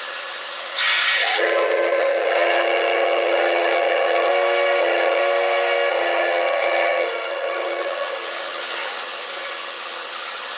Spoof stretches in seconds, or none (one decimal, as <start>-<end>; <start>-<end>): 0.0-4.3; 4.8-5.2; 5.9-10.6